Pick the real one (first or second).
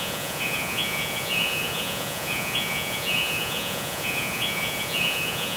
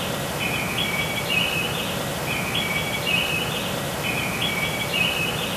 second